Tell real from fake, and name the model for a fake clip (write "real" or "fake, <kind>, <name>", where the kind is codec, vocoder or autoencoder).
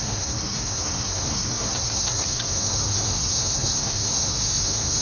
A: fake, codec, SNAC